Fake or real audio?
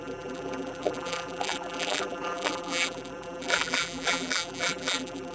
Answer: fake